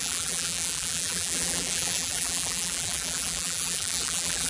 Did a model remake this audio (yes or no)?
yes